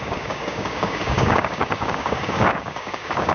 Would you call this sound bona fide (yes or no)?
no